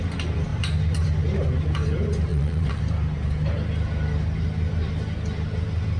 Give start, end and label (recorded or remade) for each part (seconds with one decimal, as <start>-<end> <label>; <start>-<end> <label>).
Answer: 0.0-2.3 recorded; 2.3-2.8 remade; 2.8-6.0 recorded